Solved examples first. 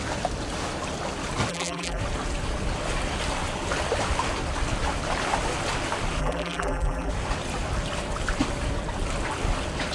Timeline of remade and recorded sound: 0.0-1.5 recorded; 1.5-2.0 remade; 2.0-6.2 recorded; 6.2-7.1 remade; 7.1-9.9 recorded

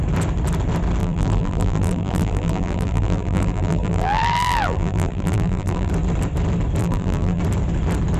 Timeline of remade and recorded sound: 0.0-1.0 recorded; 1.0-5.9 remade; 5.9-6.8 recorded; 6.8-7.4 remade; 7.4-8.2 recorded

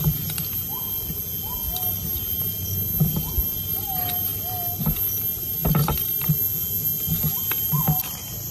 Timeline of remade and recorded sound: 0.0-8.5 recorded

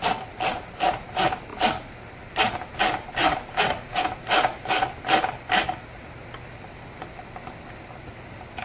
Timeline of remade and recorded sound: 0.0-8.6 recorded

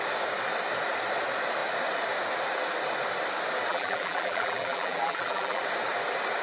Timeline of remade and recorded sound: 0.0-3.7 recorded; 3.7-5.6 remade; 5.6-6.4 recorded

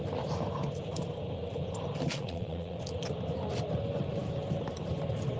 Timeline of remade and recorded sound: 0.0-2.1 recorded; 2.1-2.8 remade; 2.8-5.4 recorded

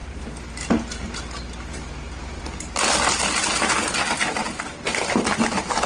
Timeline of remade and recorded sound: 0.0-5.9 recorded

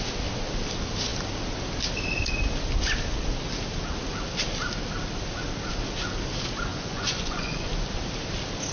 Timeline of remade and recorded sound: 0.0-6.7 recorded; 6.7-7.7 remade; 7.7-8.7 recorded